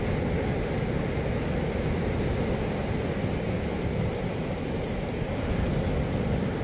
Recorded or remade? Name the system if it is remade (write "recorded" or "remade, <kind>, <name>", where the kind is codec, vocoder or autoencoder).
recorded